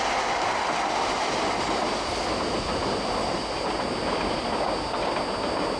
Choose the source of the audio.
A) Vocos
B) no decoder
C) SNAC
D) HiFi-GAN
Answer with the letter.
B